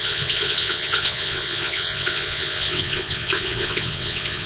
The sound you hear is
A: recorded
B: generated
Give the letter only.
B